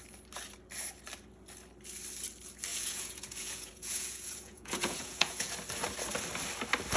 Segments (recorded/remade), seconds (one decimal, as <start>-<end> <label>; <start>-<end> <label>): 0.0-2.7 recorded; 2.7-5.5 remade; 5.5-7.0 recorded